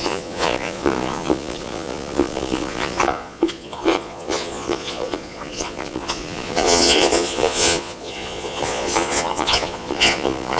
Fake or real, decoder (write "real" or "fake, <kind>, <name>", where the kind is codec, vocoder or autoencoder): fake, vocoder, Vocos